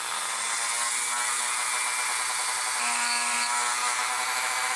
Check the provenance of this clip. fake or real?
real